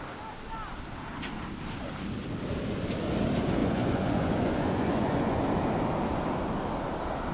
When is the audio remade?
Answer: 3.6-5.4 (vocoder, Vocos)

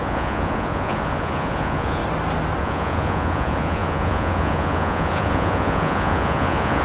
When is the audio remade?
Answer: 0.0-2.0 (vocoder, Vocos); 2.6-6.8

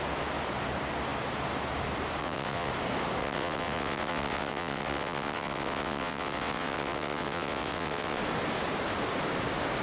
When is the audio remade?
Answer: 2.2-2.7 (vocoder, WaveNeXt); 3.2-8.2

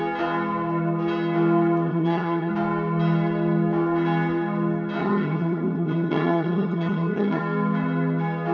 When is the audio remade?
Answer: 1.9-2.5 (vocoder, HiFi-GAN); 5.0-7.4

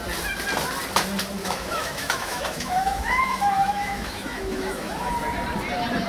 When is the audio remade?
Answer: 1.4-5.1 (autoencoder, DAC-VAE)